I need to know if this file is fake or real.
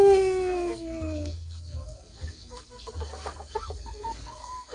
fake